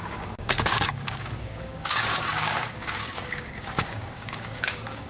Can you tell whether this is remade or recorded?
remade